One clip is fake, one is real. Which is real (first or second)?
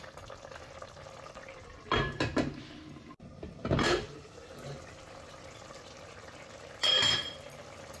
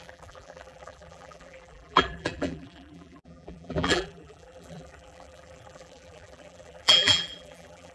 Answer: first